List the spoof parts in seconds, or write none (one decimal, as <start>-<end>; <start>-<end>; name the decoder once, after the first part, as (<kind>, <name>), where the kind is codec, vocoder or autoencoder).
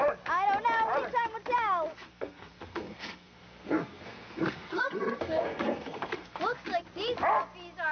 1.9-6.4 (codec, SNAC)